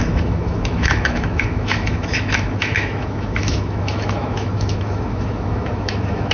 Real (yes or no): no